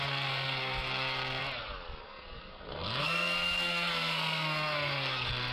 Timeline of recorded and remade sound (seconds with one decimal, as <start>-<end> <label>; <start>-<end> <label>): 0.0-1.4 remade; 1.4-2.0 recorded; 2.0-5.5 remade